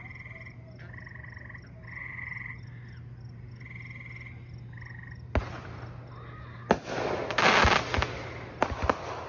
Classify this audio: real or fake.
real